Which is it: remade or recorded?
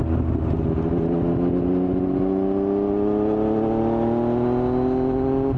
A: recorded